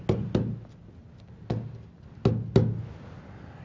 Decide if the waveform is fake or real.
real